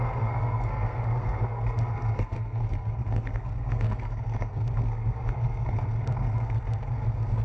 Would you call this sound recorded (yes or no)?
no